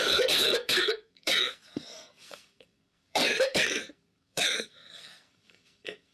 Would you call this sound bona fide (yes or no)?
no